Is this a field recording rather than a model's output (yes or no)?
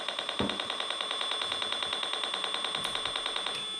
yes